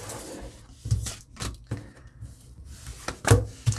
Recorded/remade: remade